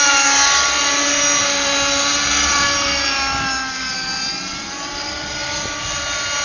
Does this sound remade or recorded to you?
recorded